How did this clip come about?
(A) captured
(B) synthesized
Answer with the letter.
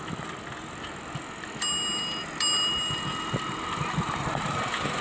A